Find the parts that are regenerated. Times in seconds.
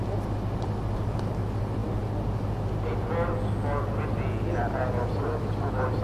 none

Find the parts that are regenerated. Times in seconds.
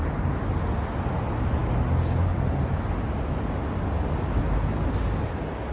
none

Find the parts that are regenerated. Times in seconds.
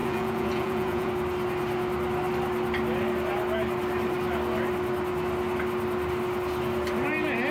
0.0-1.1 (vocoder, Vocos)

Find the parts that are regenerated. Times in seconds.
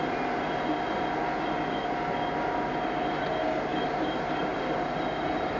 3.7-4.8 (vocoder, BigVGAN v2)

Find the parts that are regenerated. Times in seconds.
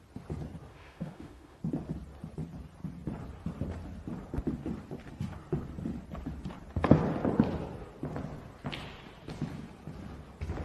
0.7-1.6 (autoencoder, DAC-VAE)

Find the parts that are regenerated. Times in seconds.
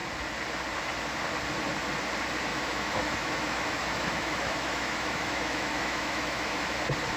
2.5-6.8 (autoencoder, DAC-VAE)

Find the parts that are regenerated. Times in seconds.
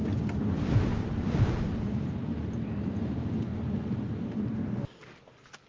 0.9-3.1 (vocoder, BigVGAN v2)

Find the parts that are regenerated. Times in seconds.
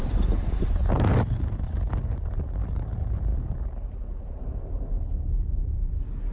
none